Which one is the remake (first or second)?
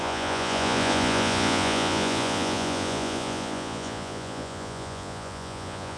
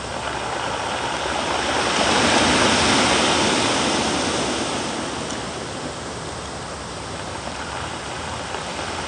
first